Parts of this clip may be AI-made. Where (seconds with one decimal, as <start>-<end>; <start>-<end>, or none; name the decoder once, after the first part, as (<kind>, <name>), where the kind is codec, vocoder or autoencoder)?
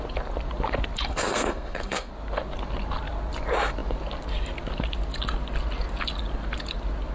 1.1-2.1 (codec, SNAC)